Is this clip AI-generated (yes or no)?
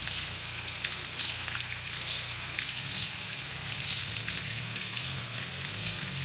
yes